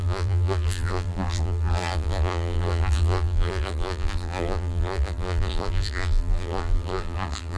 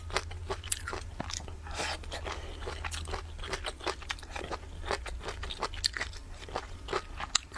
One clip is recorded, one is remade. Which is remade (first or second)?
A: first